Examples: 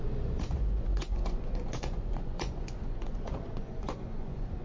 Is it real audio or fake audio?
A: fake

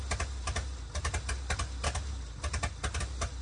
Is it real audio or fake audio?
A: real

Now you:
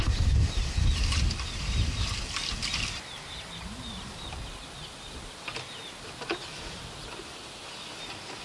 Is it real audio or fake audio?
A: real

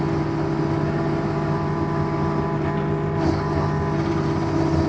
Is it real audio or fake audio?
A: real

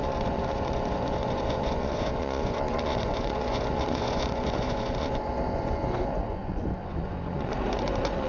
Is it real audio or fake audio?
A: fake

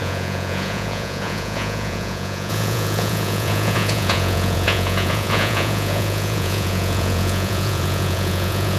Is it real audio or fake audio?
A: fake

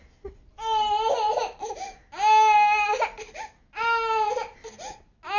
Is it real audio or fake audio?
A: real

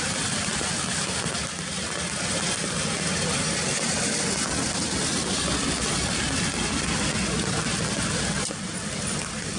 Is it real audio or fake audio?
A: real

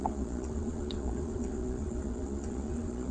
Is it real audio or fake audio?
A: fake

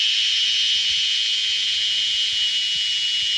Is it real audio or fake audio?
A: real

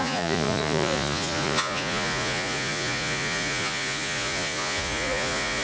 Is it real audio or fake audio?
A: fake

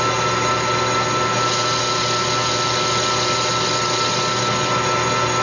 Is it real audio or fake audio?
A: real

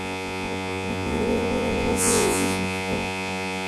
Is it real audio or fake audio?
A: fake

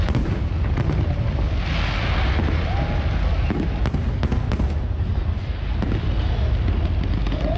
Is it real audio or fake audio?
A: real